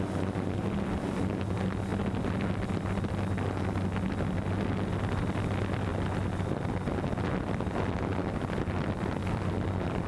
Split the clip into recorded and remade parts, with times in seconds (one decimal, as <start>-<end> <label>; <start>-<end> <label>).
0.0-10.1 recorded